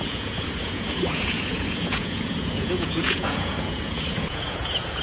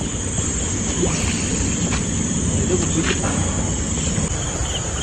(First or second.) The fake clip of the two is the first